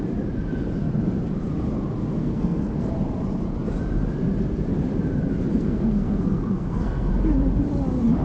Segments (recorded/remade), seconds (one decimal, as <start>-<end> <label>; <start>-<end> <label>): 0.0-2.2 recorded; 2.2-2.9 remade; 2.9-5.5 recorded; 5.5-7.1 remade; 7.1-8.2 recorded